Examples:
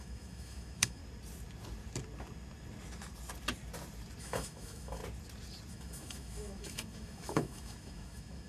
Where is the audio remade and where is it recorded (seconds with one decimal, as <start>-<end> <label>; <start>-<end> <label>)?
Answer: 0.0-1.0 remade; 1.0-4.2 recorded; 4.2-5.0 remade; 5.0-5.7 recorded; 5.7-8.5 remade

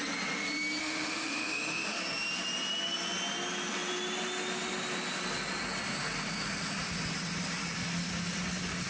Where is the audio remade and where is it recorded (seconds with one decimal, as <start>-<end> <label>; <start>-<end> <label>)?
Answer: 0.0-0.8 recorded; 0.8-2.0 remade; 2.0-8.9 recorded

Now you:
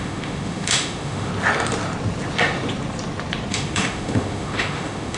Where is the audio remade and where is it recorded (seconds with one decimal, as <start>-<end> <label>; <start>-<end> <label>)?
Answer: 0.0-1.3 remade; 1.3-3.5 recorded; 3.5-5.2 remade

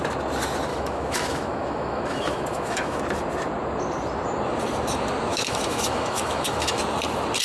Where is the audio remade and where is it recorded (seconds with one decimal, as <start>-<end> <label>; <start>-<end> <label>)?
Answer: 0.0-0.7 recorded; 0.7-3.0 remade; 3.0-5.3 recorded; 5.3-6.8 remade; 6.8-7.4 recorded

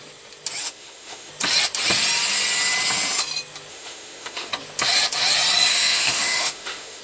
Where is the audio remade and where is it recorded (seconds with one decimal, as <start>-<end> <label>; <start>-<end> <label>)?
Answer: 0.0-0.6 recorded; 0.6-1.3 remade; 1.3-3.7 recorded; 3.7-4.5 remade; 4.5-5.7 recorded; 5.7-7.0 remade